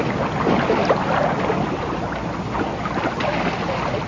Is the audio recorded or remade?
recorded